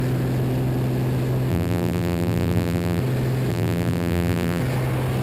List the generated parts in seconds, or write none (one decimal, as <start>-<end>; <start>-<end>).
1.5-3.0; 3.5-4.6